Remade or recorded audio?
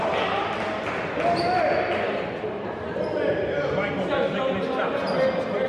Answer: recorded